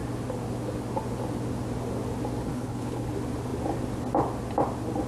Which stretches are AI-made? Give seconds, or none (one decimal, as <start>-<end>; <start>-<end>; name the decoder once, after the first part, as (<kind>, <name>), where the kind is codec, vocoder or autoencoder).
2.4-3.1 (codec, HILCodec)